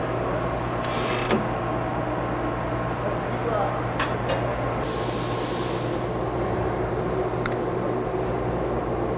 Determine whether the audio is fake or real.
real